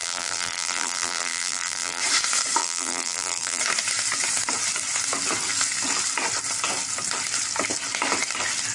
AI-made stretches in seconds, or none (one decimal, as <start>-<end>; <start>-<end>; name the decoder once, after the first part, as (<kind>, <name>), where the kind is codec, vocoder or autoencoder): 0.0-2.0 (vocoder, BigVGAN v2); 2.6-3.6